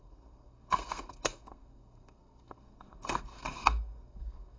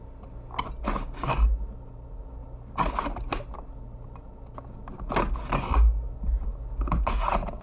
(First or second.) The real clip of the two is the second